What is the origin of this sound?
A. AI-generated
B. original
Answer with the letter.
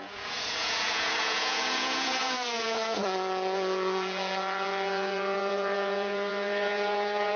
A